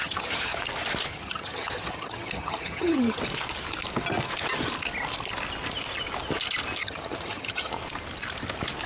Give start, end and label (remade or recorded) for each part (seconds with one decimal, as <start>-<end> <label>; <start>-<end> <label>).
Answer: 0.0-0.6 remade; 0.6-1.1 recorded; 1.1-3.2 remade; 3.2-6.8 recorded; 6.8-7.7 remade; 7.7-8.9 recorded

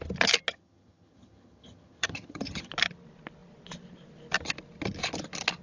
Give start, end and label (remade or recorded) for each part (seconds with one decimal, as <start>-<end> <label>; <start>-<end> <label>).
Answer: 0.0-0.5 recorded; 0.5-2.7 remade; 2.7-5.6 recorded

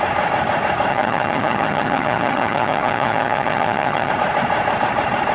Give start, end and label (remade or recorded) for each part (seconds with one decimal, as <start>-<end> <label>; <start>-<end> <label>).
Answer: 0.0-0.9 recorded; 0.9-4.1 remade; 4.1-5.3 recorded

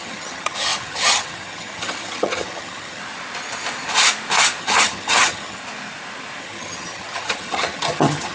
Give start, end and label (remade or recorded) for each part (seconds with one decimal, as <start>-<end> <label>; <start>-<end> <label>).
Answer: 0.0-3.0 remade; 3.0-4.6 recorded; 4.6-5.6 remade; 5.6-6.4 recorded; 6.4-8.3 remade

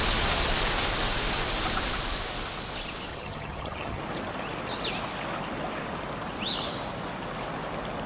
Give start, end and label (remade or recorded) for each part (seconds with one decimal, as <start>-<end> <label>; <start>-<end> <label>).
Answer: 0.0-3.1 recorded; 3.1-4.0 remade; 4.0-8.1 recorded